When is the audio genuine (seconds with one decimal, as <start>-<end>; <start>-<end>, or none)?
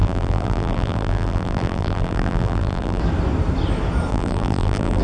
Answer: 3.0-4.1